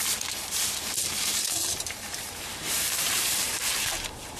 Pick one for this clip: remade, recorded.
remade